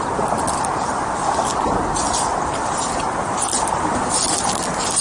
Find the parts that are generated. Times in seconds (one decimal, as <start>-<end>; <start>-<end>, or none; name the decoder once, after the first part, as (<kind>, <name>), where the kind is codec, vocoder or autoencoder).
none